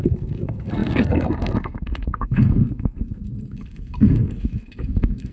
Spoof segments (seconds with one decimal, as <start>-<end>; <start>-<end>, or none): 0.0-5.3

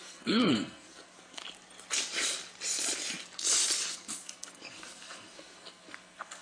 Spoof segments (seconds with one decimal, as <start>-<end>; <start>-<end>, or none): 0.0-1.4; 3.9-6.4

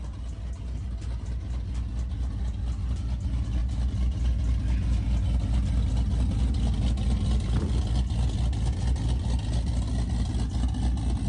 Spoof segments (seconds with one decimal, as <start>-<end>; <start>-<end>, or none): none

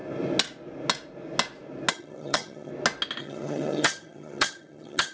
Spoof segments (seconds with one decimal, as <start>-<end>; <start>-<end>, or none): 1.9-2.7; 3.2-5.1

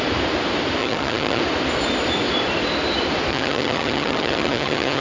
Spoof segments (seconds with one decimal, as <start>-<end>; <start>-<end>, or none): 0.8-1.4; 3.3-5.0

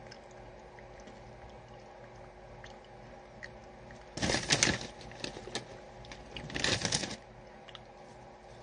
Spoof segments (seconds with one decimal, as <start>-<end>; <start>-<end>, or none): none

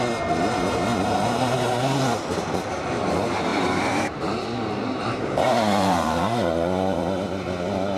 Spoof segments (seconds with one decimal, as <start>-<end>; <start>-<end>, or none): 0.9-1.8; 3.5-7.0

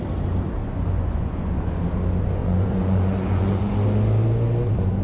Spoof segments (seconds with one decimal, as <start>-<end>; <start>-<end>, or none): 0.6-1.7; 2.4-3.6